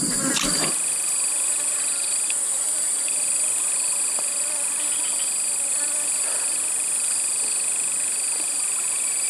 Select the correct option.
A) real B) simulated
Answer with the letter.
B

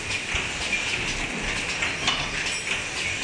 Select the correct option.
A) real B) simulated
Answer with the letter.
A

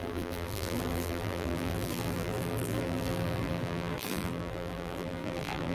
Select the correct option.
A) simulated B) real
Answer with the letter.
A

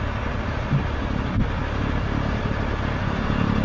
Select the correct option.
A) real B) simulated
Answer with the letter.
A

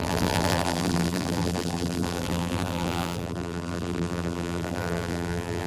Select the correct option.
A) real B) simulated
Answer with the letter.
B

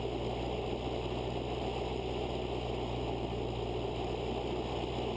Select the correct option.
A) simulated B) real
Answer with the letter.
B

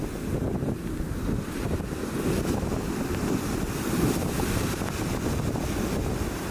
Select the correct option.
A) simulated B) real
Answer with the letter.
B